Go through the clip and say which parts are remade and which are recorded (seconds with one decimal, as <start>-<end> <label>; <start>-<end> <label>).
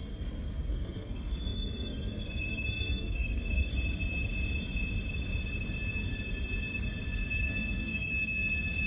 0.0-0.7 recorded; 0.7-3.7 remade; 3.7-7.5 recorded; 7.5-8.1 remade; 8.1-8.9 recorded